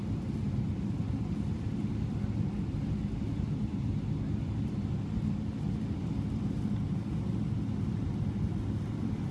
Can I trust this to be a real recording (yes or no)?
yes